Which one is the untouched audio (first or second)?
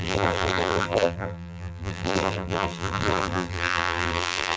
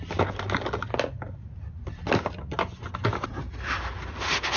second